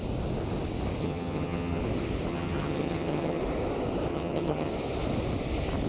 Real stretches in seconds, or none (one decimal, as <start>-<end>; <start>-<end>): 0.0-1.0; 1.8-2.3; 3.4-4.1; 4.7-5.9